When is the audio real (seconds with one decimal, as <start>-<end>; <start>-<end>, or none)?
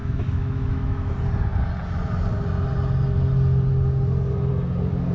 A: 1.1-5.1